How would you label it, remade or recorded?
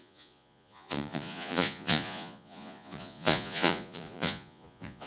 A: remade